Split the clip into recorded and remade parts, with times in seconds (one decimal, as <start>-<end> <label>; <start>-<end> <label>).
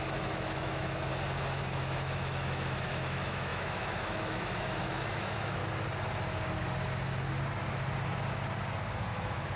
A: 0.0-1.1 remade; 1.1-1.6 recorded; 1.6-5.6 remade; 5.6-9.1 recorded; 9.1-9.6 remade